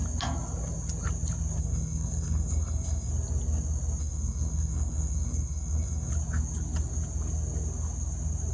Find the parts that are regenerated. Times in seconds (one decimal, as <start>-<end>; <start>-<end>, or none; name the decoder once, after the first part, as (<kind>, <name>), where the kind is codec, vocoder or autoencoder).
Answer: 1.6-3.1 (codec, SNAC); 4.0-6.1